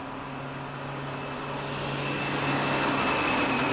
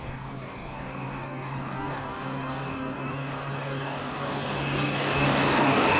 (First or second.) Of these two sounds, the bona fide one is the first